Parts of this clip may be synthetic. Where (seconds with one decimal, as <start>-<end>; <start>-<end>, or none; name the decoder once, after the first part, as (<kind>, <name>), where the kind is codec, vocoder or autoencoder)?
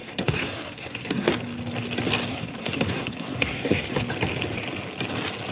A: 0.0-1.3 (codec, SNAC); 2.3-3.9